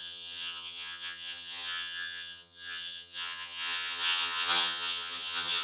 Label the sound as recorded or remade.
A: remade